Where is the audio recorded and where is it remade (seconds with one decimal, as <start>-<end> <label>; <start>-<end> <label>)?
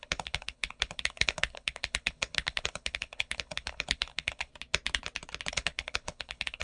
0.0-4.5 remade; 4.5-5.5 recorded; 5.5-6.6 remade